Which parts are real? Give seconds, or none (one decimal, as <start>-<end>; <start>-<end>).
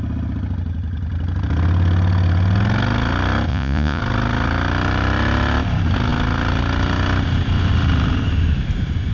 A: 0.0-3.5; 4.0-9.1